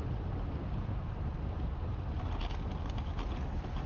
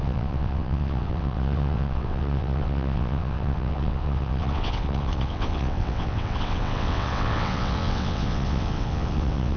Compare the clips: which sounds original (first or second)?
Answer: first